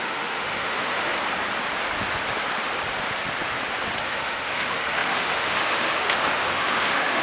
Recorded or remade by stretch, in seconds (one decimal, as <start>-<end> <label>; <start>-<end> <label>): 0.0-1.1 remade; 1.1-4.0 recorded; 4.0-7.2 remade